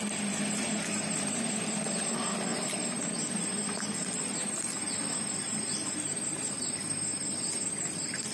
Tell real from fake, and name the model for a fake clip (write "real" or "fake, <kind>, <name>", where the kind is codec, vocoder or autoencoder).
real